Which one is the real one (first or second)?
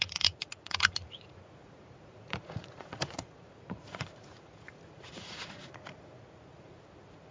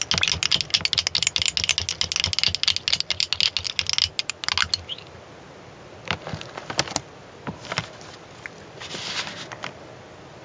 second